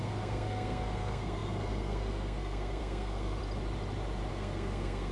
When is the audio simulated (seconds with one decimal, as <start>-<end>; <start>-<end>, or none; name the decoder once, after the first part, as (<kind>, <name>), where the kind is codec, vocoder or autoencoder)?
0.0-3.4 (codec, SNAC); 4.3-5.1